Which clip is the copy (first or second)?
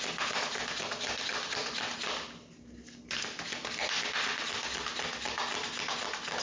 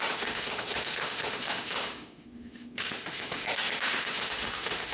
second